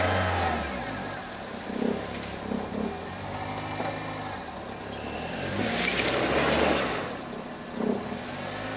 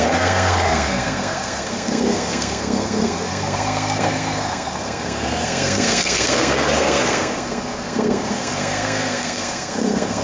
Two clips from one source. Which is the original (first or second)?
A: first